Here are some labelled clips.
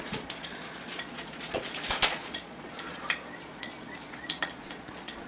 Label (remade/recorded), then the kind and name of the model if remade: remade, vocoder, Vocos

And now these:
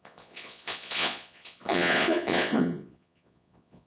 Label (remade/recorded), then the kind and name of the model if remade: remade, vocoder, Vocos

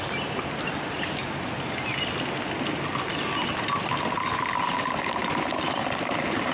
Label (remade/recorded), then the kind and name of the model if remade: recorded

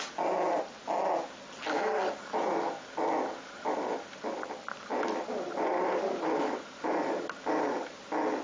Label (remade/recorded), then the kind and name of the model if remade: recorded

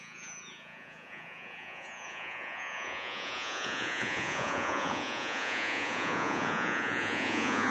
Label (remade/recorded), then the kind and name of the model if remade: remade, vocoder, Vocos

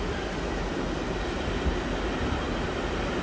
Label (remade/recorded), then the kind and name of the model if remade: recorded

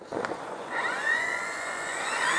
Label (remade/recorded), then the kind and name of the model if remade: remade, vocoder, Vocos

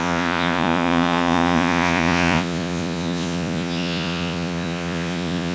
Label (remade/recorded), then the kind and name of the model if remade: remade, vocoder, Vocos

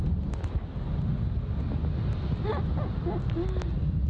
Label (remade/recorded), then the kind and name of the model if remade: recorded